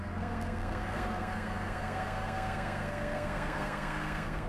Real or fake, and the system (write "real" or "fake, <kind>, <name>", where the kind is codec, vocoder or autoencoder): fake, codec, SNAC